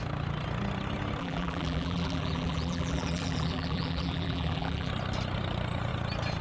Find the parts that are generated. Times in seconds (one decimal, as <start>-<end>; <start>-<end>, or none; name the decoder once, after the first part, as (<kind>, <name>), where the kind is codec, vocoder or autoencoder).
1.2-4.9 (vocoder, BigVGAN v2)